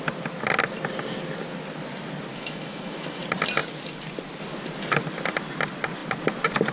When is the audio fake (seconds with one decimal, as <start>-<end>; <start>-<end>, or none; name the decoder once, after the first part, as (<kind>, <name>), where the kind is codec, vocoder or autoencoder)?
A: 2.3-3.2 (autoencoder, DAC-VAE)